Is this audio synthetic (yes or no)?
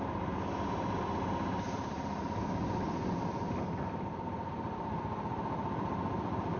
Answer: yes